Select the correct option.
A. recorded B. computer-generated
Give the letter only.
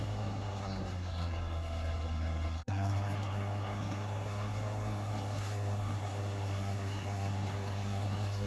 B